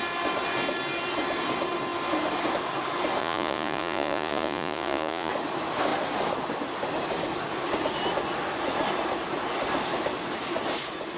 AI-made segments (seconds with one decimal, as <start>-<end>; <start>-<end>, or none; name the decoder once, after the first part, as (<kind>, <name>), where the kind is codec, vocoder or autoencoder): 3.2-5.3 (vocoder, Vocos)